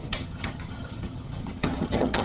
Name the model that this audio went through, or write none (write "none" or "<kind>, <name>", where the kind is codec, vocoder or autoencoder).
vocoder, HiFi-GAN